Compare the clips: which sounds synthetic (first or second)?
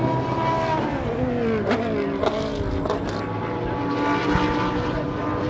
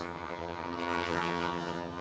second